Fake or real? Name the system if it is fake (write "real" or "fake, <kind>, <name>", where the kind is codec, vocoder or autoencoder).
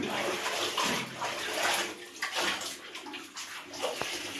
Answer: real